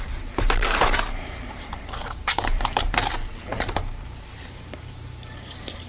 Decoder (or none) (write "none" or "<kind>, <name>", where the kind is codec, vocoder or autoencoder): vocoder, BigVGAN v2